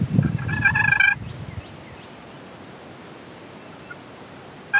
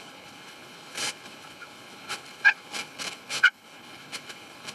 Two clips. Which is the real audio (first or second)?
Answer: first